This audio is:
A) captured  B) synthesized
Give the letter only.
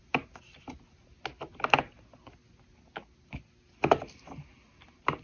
A